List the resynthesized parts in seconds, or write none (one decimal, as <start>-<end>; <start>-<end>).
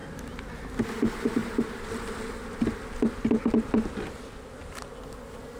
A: none